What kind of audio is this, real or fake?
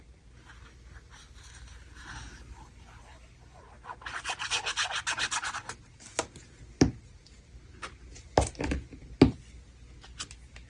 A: real